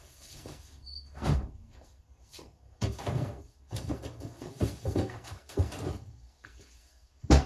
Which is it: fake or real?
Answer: fake